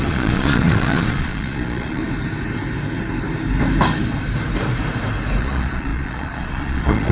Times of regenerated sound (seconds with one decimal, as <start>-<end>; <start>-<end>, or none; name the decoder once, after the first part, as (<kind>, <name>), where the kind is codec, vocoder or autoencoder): 0.0-2.0 (vocoder, Vocos); 5.4-7.1